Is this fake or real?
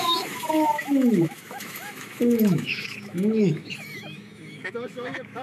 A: fake